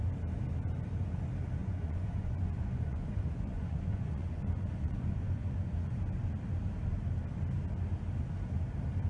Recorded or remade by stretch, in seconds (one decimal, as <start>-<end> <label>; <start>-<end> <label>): 0.0-1.6 recorded; 1.6-6.0 remade; 6.0-9.1 recorded